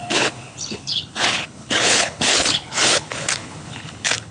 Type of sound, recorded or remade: remade